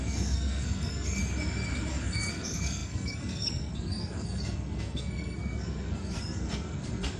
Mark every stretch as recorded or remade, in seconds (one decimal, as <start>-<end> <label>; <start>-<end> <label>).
0.0-1.2 remade; 1.2-1.9 recorded; 1.9-7.2 remade